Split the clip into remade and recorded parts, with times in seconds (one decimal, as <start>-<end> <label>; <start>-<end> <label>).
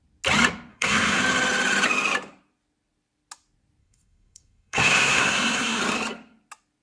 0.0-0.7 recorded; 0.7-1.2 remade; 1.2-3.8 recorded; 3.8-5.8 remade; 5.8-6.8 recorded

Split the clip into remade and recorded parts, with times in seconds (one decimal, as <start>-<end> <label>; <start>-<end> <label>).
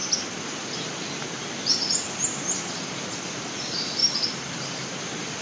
0.0-5.4 recorded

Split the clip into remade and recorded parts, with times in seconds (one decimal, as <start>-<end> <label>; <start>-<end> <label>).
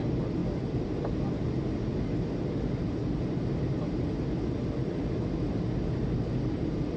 0.0-7.0 recorded